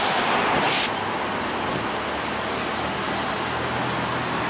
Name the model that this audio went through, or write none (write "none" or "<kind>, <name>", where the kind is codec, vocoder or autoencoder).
none